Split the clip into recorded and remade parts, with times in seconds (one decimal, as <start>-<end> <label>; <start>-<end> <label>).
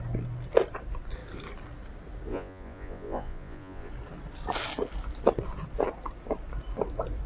0.0-2.3 recorded; 2.3-3.9 remade; 3.9-7.3 recorded